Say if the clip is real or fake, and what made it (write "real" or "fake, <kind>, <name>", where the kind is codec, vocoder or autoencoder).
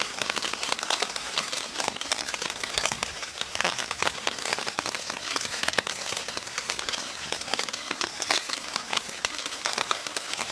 fake, codec, SNAC